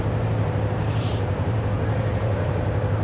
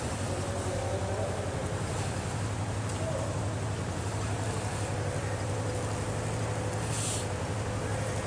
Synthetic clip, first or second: first